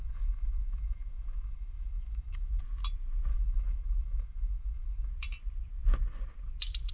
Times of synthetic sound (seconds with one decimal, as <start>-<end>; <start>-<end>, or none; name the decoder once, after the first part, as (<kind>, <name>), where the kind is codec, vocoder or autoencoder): 0.0-2.6 (autoencoder, DAC-VAE); 3.3-5.1